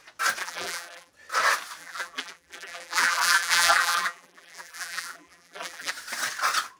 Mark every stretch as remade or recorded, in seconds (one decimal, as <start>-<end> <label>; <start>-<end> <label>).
0.0-0.4 recorded; 0.4-1.1 remade; 1.1-1.8 recorded; 1.8-5.9 remade; 5.9-6.8 recorded